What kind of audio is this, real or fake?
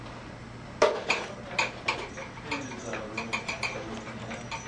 real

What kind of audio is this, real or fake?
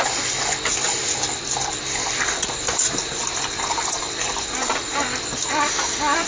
real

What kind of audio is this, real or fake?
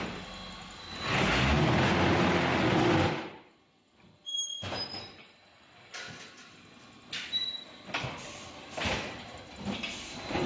real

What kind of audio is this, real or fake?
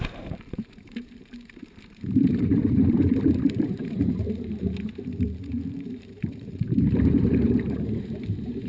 fake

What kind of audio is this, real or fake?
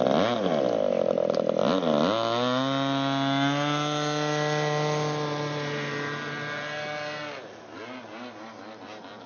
real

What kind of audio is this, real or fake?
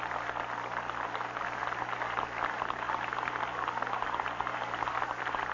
real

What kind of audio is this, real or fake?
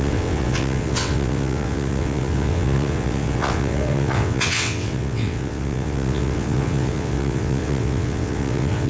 fake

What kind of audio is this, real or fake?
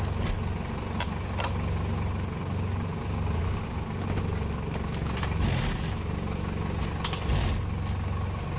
real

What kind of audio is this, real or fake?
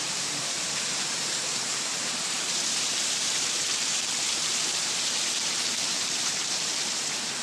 fake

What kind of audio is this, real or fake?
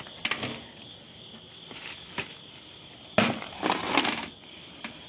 real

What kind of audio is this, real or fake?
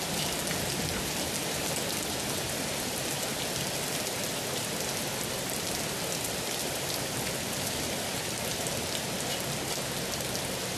real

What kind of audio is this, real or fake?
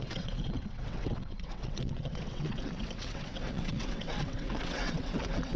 fake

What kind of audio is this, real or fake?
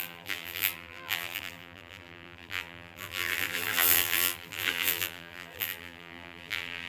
fake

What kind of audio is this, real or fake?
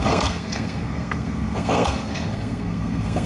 fake